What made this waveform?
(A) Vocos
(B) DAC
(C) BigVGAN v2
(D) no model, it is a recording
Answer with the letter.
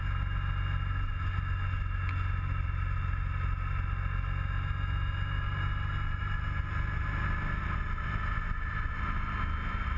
D